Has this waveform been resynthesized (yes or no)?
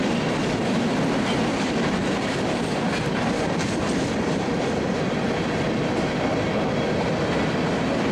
no